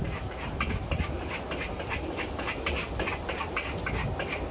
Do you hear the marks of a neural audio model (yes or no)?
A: no